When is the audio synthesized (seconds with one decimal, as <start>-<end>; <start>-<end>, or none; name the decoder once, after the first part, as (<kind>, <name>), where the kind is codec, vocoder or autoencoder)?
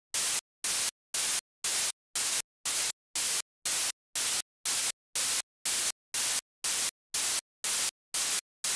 none